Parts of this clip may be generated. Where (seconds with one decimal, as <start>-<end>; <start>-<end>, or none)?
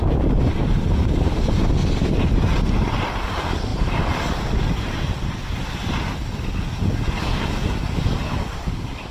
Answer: none